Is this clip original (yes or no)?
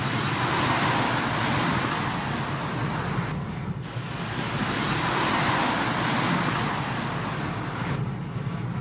yes